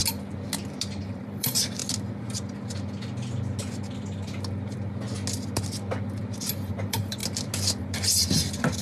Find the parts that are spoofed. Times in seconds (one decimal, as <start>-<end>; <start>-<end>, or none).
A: 1.0-1.8; 6.7-7.2; 7.8-8.8